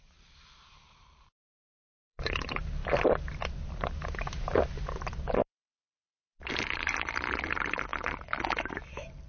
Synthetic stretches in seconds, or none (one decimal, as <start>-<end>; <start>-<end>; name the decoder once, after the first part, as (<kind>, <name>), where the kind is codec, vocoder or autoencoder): 0.0-2.8 (vocoder, BigVGAN v2); 3.7-5.4; 6.5-7.9; 8.9-9.3